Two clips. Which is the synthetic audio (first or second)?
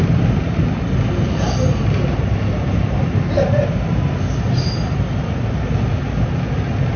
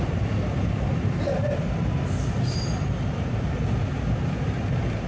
second